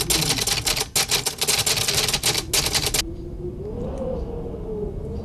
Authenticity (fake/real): real